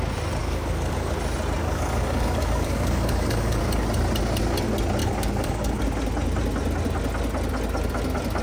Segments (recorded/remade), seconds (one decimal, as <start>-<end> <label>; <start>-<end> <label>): 0.0-0.4 recorded; 0.4-1.1 remade; 1.1-1.6 recorded; 1.6-3.6 remade; 3.6-5.0 recorded; 5.0-5.8 remade; 5.8-8.4 recorded